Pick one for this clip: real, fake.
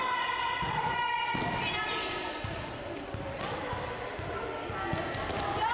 real